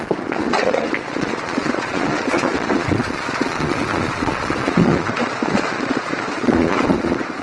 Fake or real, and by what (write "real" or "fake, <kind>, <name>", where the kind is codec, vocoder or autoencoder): fake, vocoder, Vocos